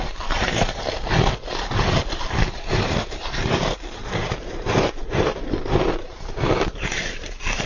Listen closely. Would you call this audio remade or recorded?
remade